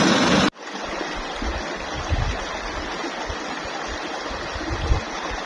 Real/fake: real